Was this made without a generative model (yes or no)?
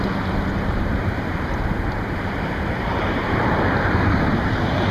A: no